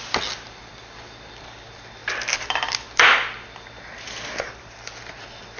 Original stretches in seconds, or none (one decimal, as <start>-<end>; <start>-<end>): 0.0-5.6